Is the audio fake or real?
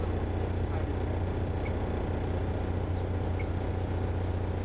real